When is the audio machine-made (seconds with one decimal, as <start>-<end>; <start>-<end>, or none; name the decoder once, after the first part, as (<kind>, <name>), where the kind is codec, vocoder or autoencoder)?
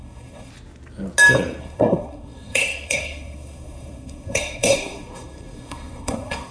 0.0-0.5 (codec, SNAC); 1.6-6.5